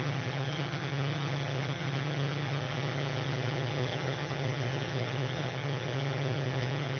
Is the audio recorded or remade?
remade